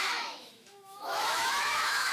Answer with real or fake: fake